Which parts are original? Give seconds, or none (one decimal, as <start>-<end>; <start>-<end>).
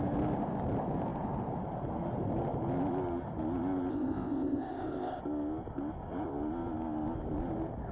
0.0-3.9; 5.2-7.9